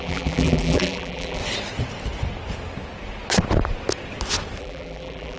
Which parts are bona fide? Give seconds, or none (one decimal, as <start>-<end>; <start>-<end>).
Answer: 1.4-4.6